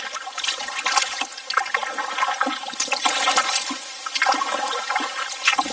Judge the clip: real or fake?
real